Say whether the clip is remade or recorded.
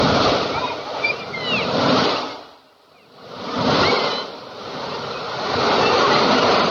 recorded